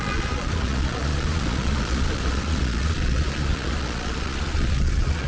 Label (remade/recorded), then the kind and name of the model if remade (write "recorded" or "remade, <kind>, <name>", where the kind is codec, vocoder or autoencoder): remade, vocoder, Vocos